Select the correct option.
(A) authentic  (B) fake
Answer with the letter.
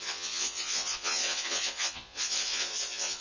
B